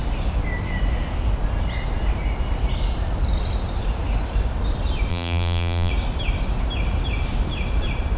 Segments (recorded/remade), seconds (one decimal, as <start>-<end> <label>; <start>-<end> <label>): 0.0-5.1 recorded; 5.1-5.9 remade; 5.9-8.2 recorded